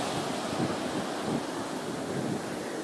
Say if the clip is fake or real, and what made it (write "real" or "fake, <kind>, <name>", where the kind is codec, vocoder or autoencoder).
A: real